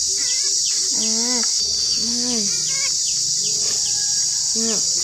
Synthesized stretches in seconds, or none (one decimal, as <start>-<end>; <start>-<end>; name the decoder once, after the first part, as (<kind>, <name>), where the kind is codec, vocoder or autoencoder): 1.8-2.5 (autoencoder, DAC-VAE)